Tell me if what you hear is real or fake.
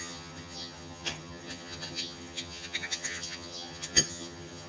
fake